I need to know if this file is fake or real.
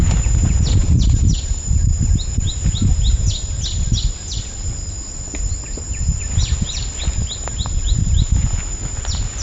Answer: real